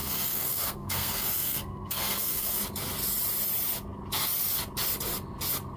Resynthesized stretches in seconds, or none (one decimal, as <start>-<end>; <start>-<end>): 0.0-2.6